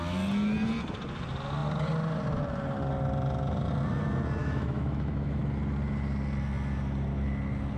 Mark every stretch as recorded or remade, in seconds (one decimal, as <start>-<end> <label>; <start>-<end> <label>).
0.0-4.4 recorded; 4.4-5.4 remade; 5.4-7.8 recorded